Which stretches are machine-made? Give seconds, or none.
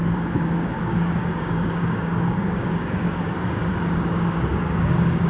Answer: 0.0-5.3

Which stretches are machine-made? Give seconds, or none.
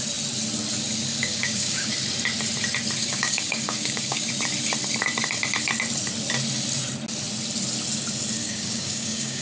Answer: 1.2-1.9; 3.0-4.3; 8.4-9.4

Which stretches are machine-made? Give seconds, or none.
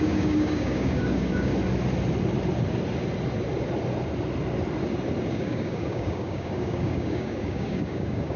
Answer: 0.0-1.5; 5.3-8.4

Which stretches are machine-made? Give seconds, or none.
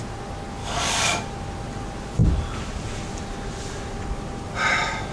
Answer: 0.6-1.3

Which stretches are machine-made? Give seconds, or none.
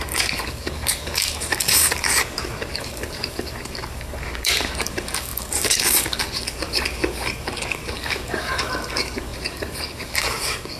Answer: 0.0-10.8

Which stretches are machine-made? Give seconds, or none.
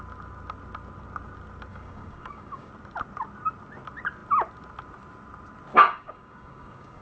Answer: 1.7-2.7; 5.7-7.0